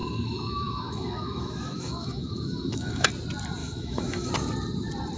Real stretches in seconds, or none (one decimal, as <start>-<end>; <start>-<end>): 3.1-3.6; 4.3-5.2